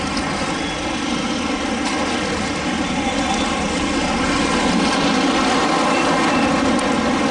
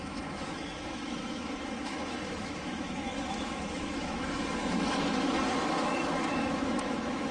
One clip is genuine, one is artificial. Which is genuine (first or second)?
first